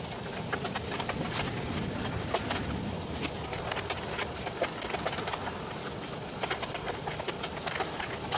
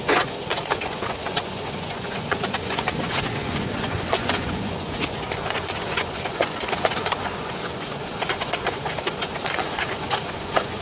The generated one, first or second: second